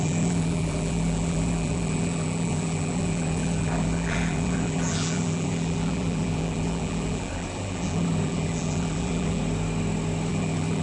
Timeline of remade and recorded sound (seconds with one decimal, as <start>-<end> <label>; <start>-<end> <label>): 0.0-9.4 remade; 9.4-10.3 recorded; 10.3-10.8 remade